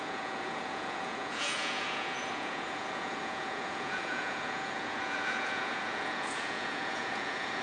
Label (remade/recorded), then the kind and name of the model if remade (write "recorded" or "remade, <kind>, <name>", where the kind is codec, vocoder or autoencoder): remade, vocoder, Vocos